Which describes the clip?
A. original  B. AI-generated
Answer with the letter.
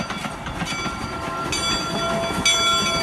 A